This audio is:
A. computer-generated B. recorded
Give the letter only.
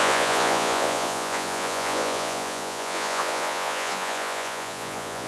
A